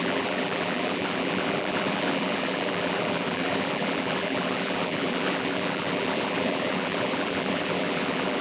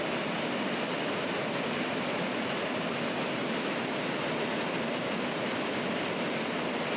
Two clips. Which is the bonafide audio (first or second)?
second